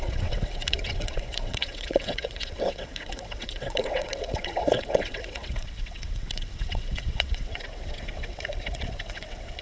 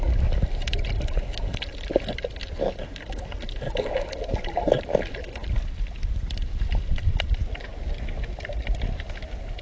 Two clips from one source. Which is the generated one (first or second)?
first